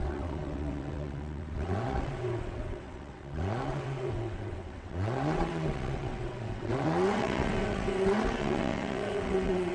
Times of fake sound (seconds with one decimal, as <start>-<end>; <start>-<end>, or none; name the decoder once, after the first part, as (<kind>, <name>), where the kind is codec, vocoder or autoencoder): 0.0-9.7 (vocoder, WaveNeXt)